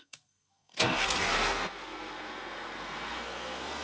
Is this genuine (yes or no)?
no